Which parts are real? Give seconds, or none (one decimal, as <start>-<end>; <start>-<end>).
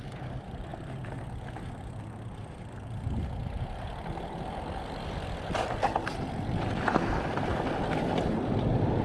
0.7-2.0; 7.5-8.3